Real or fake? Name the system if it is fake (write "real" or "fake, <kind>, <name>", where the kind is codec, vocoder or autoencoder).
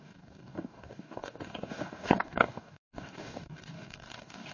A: fake, codec, DAC